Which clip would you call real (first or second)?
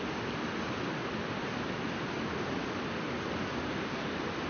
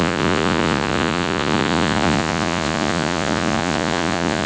first